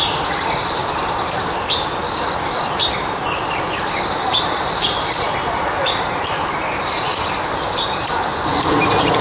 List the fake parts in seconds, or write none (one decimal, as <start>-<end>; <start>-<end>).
0.0-0.8; 4.1-7.1; 8.5-9.2